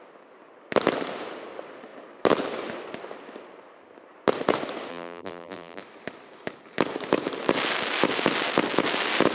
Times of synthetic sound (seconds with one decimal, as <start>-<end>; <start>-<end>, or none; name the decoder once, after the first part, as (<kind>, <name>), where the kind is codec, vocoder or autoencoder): 4.9-5.8 (vocoder, BigVGAN v2)